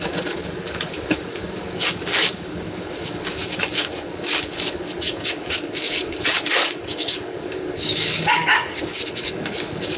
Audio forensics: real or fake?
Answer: fake